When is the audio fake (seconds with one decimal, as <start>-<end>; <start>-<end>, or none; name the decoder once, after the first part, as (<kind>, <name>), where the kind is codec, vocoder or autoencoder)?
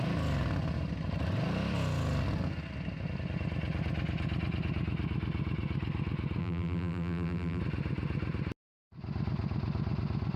6.4-7.6 (vocoder, BigVGAN v2)